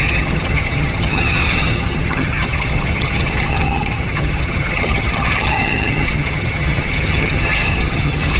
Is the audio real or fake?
fake